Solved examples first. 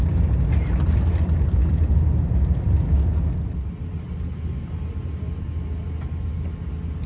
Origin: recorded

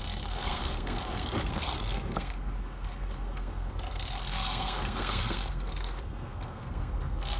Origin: remade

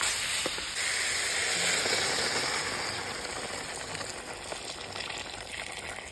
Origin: recorded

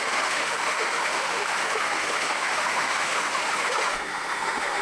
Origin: remade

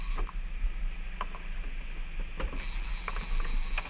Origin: recorded